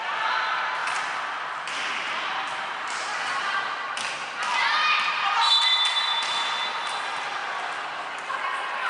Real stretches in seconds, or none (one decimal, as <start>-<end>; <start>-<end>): 0.0-8.9